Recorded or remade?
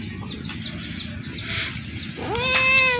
recorded